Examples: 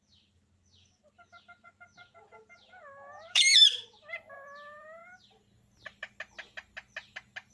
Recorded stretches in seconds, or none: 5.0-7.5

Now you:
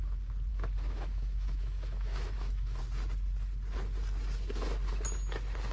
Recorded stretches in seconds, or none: 0.0-0.5; 2.8-5.7

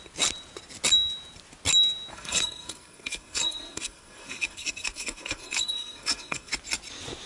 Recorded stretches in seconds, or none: 0.0-2.1; 6.5-7.3

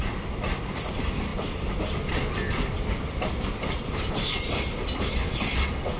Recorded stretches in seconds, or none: 0.0-6.0

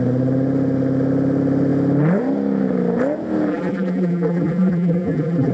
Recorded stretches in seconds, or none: 0.0-3.5

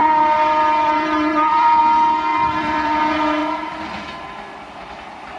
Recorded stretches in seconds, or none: 1.8-2.3; 3.0-5.4

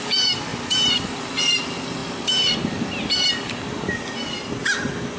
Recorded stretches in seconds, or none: 0.0-5.2

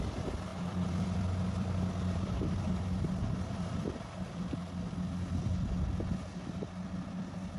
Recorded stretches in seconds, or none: 4.6-6.6